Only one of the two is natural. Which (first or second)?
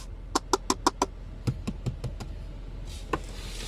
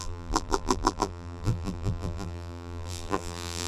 first